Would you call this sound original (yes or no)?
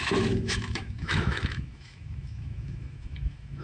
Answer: no